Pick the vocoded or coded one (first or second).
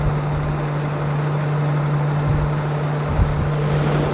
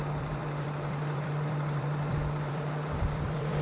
second